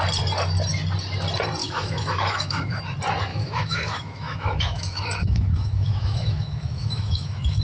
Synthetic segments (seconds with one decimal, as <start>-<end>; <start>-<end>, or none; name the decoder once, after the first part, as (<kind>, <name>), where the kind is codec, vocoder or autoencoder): 1.6-2.8 (autoencoder, DAC-VAE); 3.3-7.6